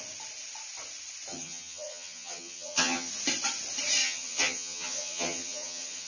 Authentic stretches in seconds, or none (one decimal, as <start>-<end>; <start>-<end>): 0.0-1.3; 3.1-4.0